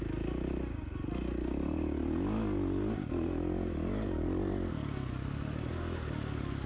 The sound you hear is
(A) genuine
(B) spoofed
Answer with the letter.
A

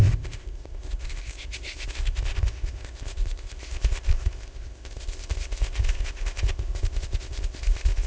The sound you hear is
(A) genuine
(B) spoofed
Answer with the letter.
B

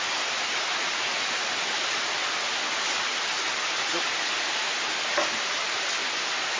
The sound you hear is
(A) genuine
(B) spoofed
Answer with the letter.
A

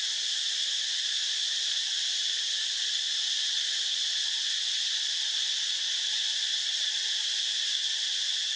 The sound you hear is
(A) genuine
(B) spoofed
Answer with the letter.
A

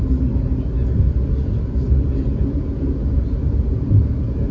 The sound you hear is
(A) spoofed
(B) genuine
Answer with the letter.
B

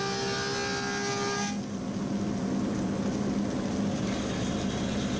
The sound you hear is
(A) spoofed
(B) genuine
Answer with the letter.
B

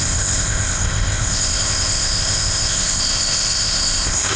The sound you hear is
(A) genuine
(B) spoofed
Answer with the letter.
B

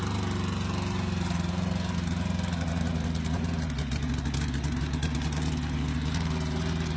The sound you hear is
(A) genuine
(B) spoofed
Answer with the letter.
A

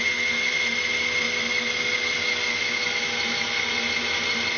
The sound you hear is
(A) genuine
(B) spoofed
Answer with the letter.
A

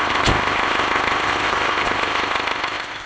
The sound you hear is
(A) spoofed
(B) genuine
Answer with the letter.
A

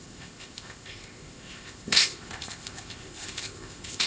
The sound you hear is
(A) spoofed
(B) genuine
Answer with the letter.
A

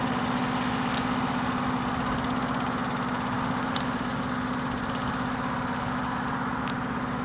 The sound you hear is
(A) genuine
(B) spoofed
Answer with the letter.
A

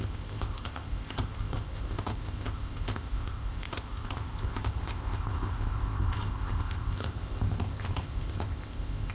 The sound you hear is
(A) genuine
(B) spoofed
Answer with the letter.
B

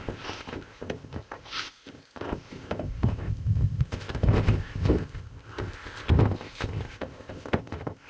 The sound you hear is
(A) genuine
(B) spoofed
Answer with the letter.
B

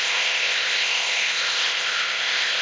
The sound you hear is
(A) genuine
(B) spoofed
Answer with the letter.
B